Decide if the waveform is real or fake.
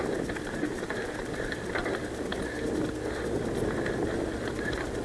real